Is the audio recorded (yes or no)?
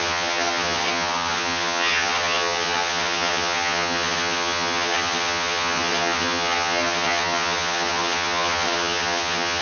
no